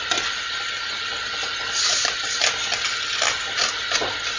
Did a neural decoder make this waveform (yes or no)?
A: no